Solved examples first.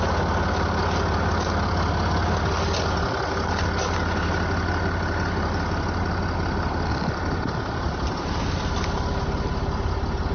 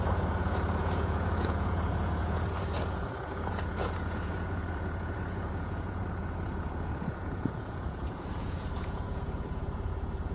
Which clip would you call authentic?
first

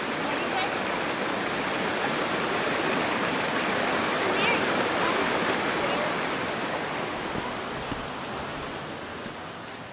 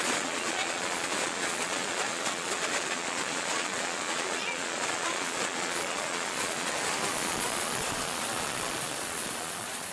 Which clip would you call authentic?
first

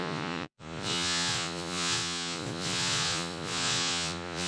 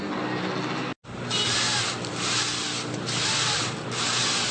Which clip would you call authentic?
second